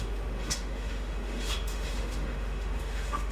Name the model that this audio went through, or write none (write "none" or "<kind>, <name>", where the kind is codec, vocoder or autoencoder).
autoencoder, DAC-VAE